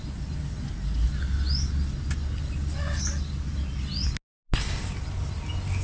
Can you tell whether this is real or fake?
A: real